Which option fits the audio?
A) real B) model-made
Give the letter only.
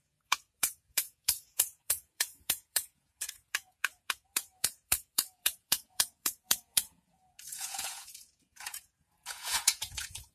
B